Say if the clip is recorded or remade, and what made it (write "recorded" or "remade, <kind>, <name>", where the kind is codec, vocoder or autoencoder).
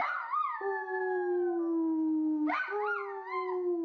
recorded